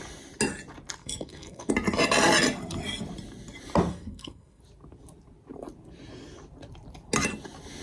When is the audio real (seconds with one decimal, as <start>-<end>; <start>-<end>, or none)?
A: 0.0-1.0; 1.7-3.9; 4.6-7.8